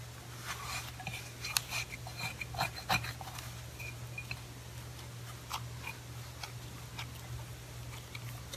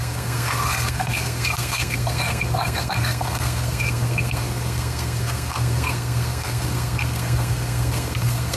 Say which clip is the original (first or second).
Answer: first